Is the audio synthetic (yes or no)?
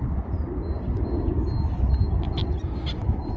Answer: no